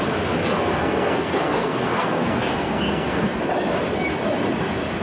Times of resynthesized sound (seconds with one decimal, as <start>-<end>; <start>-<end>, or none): 0.4-3.4